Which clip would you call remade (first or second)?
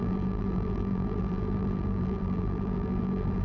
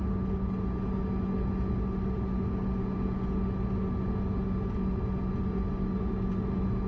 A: first